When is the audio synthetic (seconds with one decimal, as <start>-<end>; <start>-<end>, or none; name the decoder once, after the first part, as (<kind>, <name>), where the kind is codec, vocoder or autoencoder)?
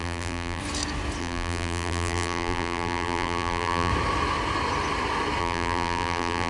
0.0-0.6 (vocoder, BigVGAN v2); 1.2-3.9; 5.4-6.5